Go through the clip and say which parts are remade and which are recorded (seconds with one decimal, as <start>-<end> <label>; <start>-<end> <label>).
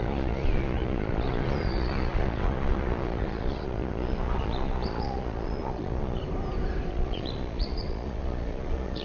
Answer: 0.0-6.2 remade; 6.2-6.9 recorded; 6.9-9.0 remade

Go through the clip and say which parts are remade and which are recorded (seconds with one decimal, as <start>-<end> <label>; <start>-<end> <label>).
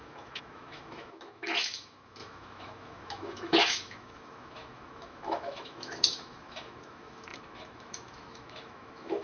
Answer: 0.0-9.2 remade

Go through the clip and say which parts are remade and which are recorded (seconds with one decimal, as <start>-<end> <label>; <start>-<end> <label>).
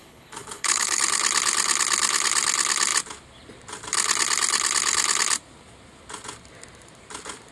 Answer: 0.0-1.0 remade; 1.0-7.5 recorded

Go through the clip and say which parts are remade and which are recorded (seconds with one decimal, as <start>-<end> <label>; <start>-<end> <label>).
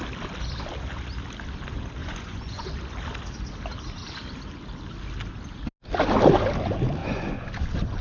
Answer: 0.0-2.0 recorded; 2.0-2.7 remade; 2.7-7.0 recorded; 7.0-7.5 remade; 7.5-8.0 recorded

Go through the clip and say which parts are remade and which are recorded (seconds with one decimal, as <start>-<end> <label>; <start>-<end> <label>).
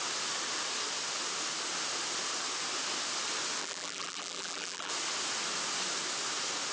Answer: 0.0-3.6 recorded; 3.6-4.9 remade; 4.9-6.7 recorded